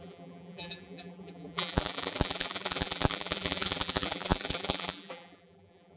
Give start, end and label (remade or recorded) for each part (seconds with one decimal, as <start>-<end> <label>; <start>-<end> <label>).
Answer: 0.0-6.0 remade